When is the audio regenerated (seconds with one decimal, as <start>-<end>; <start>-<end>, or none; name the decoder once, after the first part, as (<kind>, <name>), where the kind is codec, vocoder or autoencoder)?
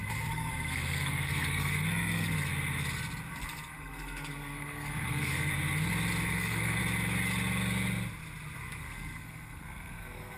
0.0-2.5 (codec, SNAC); 3.3-5.5; 6.3-6.8; 8.6-10.4